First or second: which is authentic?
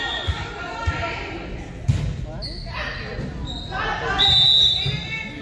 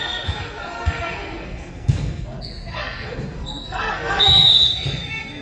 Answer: first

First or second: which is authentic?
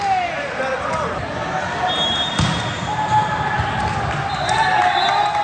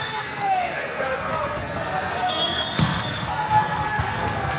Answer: first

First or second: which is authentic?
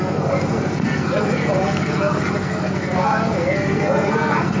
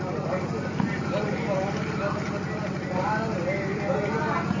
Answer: second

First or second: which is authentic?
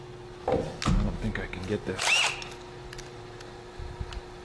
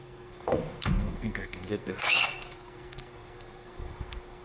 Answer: first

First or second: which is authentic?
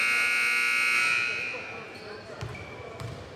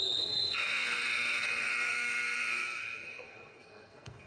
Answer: first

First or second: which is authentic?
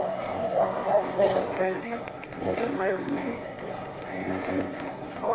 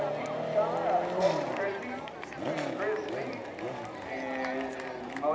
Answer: second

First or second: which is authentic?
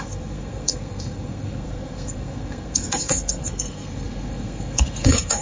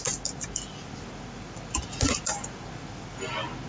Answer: second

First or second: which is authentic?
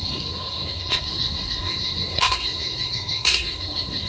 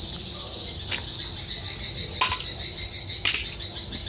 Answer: second